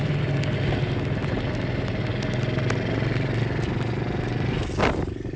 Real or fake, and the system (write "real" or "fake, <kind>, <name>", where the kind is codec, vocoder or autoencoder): real